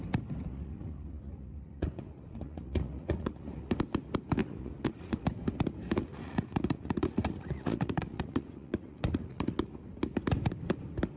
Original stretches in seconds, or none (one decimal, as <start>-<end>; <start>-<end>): 0.0-0.5; 3.7-4.4; 5.2-6.0; 9.8-11.2